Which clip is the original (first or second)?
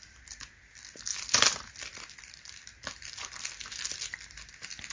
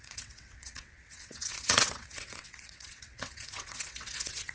first